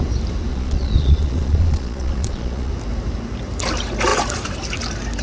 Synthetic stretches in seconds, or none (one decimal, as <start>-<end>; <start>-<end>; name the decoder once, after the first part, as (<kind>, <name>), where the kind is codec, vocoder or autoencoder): 0.5-2.7 (vocoder, Vocos)